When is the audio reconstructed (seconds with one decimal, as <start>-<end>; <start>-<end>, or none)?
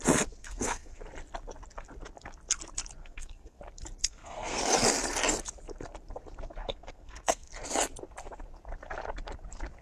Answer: 0.4-1.0; 3.0-3.6; 4.0-4.6; 6.6-7.5